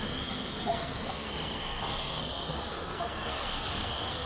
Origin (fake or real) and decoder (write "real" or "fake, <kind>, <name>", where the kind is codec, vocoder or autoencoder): fake, codec, SNAC